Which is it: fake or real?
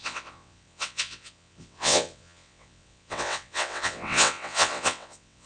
fake